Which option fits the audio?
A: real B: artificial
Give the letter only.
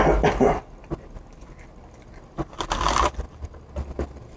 A